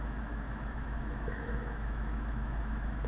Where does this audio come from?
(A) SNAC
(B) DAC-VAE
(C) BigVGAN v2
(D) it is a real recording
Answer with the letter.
B